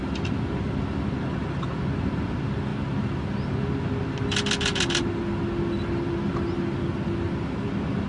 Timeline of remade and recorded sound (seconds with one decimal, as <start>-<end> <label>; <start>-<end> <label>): 0.0-8.1 recorded